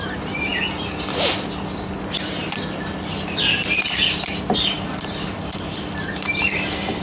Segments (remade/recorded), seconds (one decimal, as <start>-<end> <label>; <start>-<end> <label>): 0.0-7.0 recorded